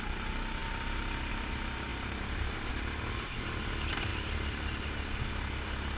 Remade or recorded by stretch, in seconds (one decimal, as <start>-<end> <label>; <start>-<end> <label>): 0.0-1.9 recorded; 1.9-2.7 remade; 2.7-6.0 recorded